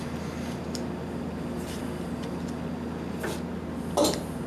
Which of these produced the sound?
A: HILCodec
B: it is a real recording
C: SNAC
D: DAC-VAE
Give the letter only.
B